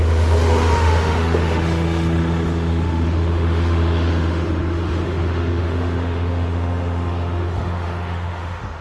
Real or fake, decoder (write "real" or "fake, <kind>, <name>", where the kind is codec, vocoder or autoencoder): fake, autoencoder, DAC-VAE